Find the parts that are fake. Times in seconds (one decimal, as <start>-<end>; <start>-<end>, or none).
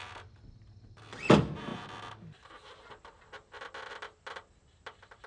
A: none